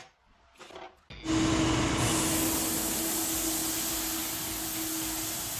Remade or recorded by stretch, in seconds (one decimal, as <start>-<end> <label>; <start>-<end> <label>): 0.0-5.6 recorded